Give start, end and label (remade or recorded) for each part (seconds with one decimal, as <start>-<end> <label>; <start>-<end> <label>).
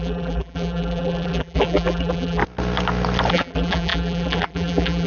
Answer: 0.0-2.4 remade; 2.4-3.3 recorded; 3.3-5.1 remade